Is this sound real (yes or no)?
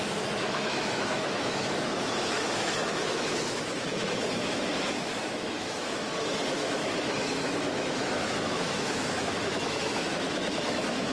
no